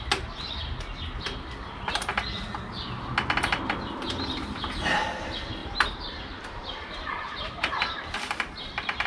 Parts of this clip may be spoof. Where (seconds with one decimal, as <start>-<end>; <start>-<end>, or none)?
5.6-9.1